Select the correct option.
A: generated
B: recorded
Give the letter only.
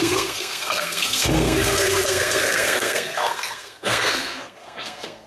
A